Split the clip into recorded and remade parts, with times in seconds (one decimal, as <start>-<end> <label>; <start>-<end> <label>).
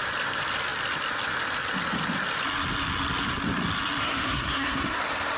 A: 0.0-4.0 recorded; 4.0-5.0 remade; 5.0-5.4 recorded